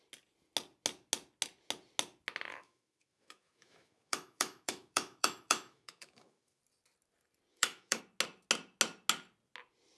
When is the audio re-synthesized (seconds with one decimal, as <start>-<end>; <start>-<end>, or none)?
2.5-6.6; 7.5-8.0